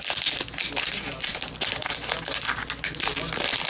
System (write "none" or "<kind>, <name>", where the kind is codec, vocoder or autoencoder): none